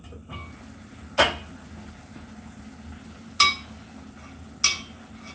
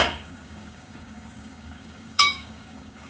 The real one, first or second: first